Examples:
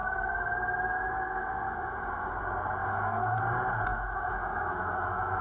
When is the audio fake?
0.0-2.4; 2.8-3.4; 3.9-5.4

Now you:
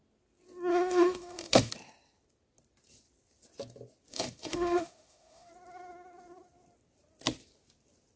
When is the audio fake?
0.7-1.7; 4.1-5.5

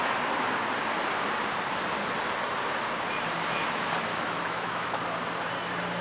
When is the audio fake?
4.1-5.0

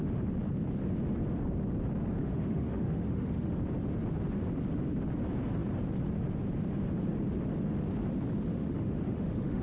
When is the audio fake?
2.2-3.6; 8.5-9.6

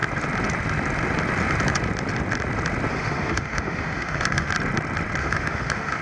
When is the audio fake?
2.9-4.5; 5.2-6.0